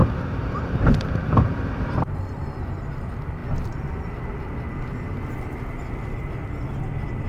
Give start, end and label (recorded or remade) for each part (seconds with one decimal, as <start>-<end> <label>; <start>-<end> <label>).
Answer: 0.0-2.6 remade; 2.6-7.3 recorded